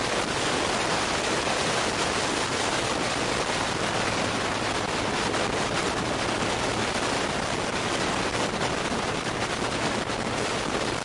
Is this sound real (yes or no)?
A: yes